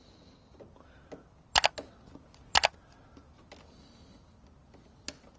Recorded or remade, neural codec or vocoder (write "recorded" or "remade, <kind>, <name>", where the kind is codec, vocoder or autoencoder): recorded